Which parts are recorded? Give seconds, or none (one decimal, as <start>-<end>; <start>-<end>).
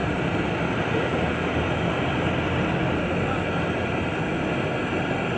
0.0-5.4